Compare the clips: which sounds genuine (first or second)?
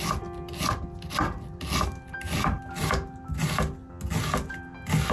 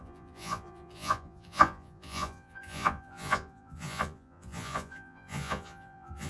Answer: first